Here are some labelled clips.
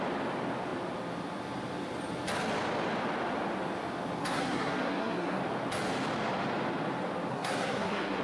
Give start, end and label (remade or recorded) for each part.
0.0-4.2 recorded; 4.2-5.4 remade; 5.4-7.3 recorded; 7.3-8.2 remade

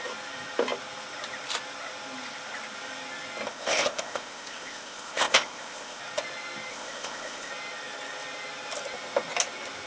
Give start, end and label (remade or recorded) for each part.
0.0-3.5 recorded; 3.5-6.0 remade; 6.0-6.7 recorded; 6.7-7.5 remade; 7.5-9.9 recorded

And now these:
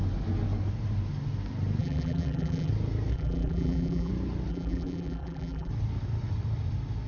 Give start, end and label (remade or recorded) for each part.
0.0-1.8 recorded; 1.8-2.7 remade; 2.7-3.1 recorded; 3.1-4.1 remade; 4.1-4.5 recorded; 4.5-5.7 remade; 5.7-7.1 recorded

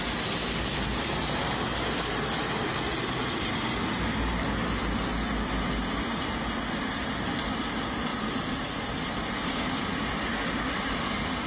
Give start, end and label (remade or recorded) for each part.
0.0-0.7 recorded; 0.7-1.5 remade; 1.5-8.1 recorded; 8.1-10.4 remade; 10.4-11.5 recorded

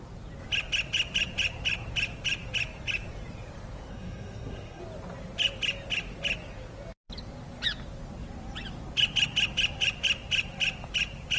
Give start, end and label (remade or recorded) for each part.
0.0-3.9 recorded; 3.9-4.8 remade; 4.8-11.4 recorded

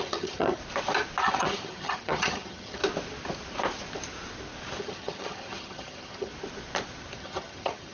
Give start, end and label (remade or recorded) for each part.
0.0-0.6 remade; 0.6-1.2 recorded; 1.2-2.8 remade; 2.8-4.8 recorded; 4.8-6.3 remade; 6.3-7.2 recorded; 7.2-7.9 remade